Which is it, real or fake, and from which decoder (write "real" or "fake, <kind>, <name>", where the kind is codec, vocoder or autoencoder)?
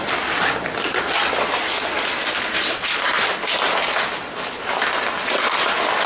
real